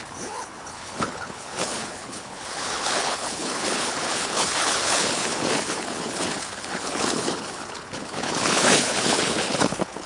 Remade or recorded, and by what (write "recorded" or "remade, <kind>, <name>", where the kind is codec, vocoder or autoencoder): remade, codec, HILCodec